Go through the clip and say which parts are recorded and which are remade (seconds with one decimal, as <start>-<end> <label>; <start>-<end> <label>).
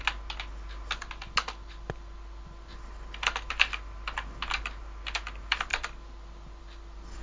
0.0-7.2 recorded